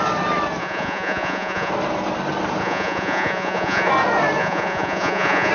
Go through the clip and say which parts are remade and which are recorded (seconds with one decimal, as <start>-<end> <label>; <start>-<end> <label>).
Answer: 0.0-0.6 recorded; 0.6-1.7 remade; 1.7-2.6 recorded; 2.6-3.9 remade; 3.9-4.4 recorded; 4.4-5.5 remade